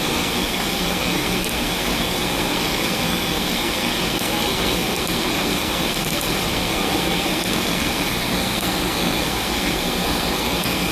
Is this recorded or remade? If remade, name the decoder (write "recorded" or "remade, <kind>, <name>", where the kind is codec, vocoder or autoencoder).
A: remade, codec, SNAC